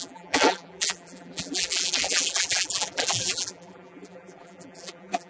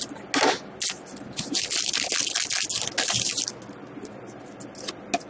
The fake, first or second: first